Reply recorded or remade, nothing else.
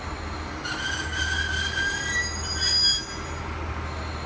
recorded